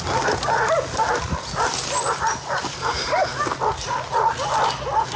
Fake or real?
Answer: real